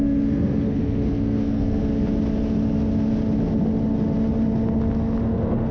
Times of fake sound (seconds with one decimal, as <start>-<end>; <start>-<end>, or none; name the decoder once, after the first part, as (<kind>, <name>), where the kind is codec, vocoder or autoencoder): 0.0-1.8 (codec, SNAC); 5.2-5.7